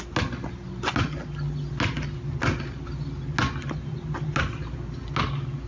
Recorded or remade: recorded